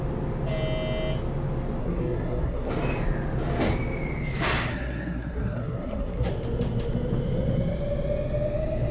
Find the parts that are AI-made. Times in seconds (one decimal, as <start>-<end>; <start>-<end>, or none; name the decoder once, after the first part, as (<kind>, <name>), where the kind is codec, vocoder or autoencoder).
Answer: 1.8-2.7 (codec, SNAC); 4.7-6.3